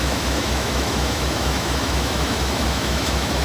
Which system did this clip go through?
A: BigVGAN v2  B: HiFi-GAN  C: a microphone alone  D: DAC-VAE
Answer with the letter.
D